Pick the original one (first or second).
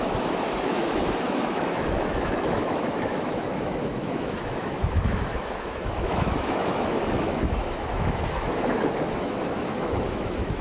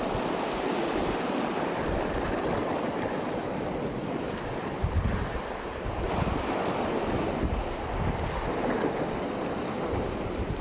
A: second